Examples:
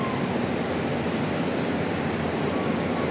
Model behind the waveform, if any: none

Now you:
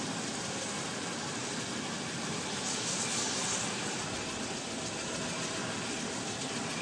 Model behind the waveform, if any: none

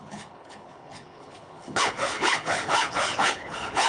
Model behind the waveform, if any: codec, HILCodec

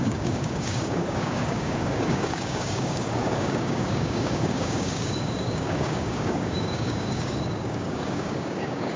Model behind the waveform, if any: codec, DAC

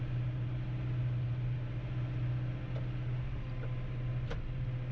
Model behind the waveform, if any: none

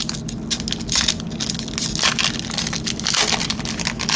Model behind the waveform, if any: none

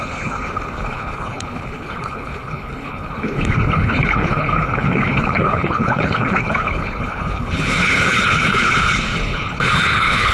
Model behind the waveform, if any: codec, HILCodec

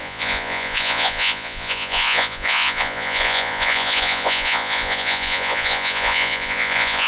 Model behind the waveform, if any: vocoder, Vocos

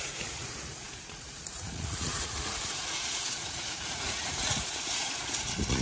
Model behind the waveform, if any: vocoder, Vocos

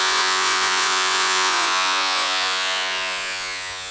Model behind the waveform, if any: vocoder, Vocos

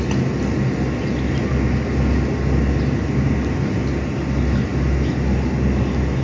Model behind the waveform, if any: none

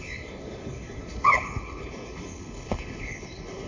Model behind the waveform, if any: codec, HILCodec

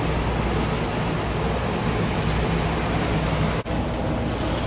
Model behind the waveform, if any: none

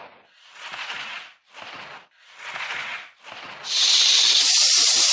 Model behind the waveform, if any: none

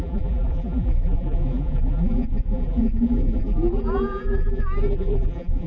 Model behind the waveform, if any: vocoder, BigVGAN v2